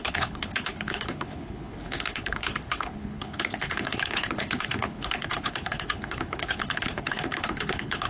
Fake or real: fake